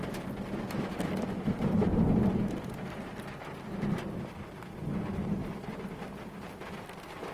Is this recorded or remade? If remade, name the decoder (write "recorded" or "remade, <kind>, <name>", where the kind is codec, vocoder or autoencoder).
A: recorded